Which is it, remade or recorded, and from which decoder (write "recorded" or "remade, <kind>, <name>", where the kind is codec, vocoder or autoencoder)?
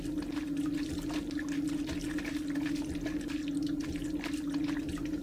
recorded